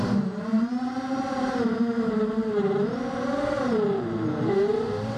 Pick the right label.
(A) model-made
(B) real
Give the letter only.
A